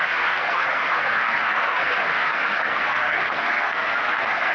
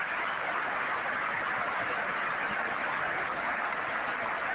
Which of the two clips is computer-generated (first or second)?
first